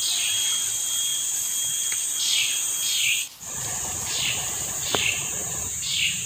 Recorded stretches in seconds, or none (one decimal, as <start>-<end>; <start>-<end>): 1.1-3.3; 5.4-6.3